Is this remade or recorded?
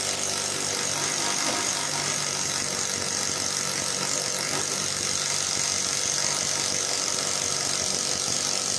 recorded